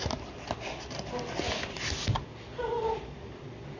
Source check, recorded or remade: recorded